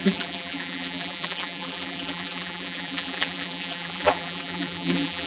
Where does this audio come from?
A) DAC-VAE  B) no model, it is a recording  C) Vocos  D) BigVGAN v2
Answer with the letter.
D